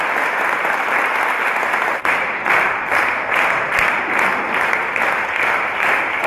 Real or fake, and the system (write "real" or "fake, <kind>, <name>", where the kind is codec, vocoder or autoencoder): real